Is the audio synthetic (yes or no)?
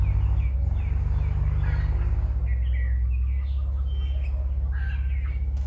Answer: no